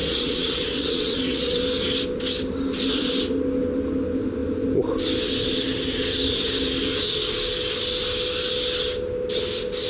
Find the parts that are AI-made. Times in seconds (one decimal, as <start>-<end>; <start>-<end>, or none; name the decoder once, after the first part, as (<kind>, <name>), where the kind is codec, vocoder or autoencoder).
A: 0.0-1.6 (vocoder, WaveNeXt)